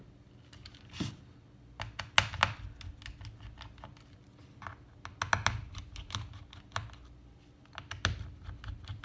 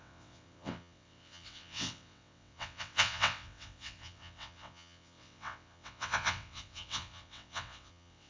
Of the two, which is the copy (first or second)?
second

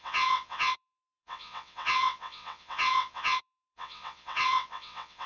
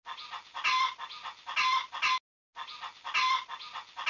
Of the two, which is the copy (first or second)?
first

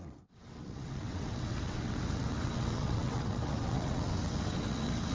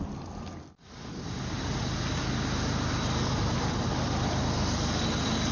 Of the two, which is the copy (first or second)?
first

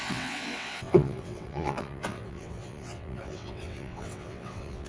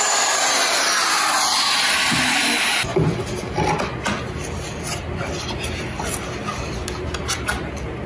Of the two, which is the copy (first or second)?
first